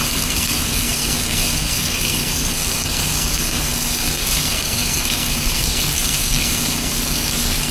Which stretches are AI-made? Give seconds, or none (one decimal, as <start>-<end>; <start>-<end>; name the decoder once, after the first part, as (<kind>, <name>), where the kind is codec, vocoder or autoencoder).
0.0-7.7 (codec, SNAC)